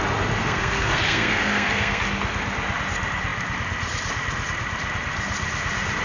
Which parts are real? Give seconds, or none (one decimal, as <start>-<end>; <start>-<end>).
0.0-0.4; 2.0-6.0